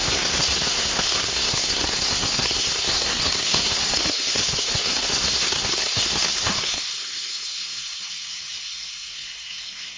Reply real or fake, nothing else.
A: fake